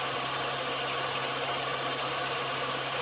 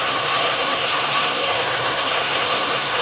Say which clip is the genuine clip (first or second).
first